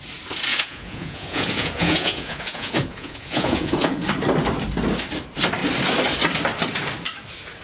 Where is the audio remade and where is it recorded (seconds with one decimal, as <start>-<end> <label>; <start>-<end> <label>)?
0.0-0.5 recorded; 0.5-4.1 remade; 4.1-7.6 recorded